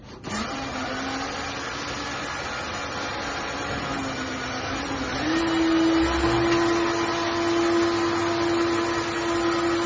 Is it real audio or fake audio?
real